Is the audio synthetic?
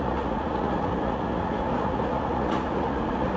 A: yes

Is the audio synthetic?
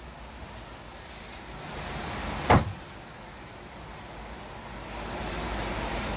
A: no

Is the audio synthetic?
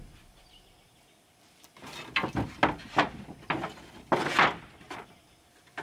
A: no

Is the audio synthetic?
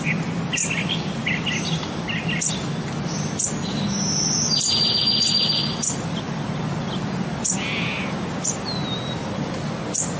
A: no